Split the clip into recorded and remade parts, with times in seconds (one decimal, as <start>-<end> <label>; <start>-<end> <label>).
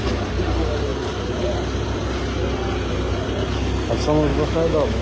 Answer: 0.0-4.3 recorded; 4.3-5.0 remade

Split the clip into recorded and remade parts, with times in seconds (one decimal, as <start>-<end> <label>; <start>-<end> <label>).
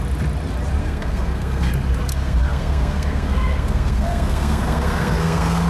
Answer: 0.0-0.8 recorded; 0.8-1.7 remade; 1.7-2.1 recorded; 2.1-5.7 remade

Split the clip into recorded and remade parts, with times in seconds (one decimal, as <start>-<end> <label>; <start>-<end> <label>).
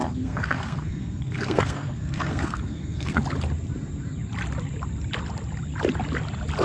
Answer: 0.0-3.2 remade; 3.2-6.6 recorded